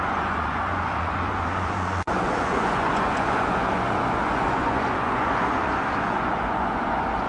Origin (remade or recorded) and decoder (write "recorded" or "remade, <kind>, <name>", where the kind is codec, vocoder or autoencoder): remade, vocoder, Vocos